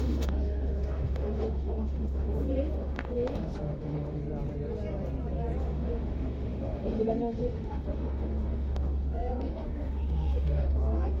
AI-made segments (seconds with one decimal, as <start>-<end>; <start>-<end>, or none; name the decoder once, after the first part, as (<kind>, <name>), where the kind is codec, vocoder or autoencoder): 0.0-4.2 (autoencoder, DAC-VAE); 5.6-11.2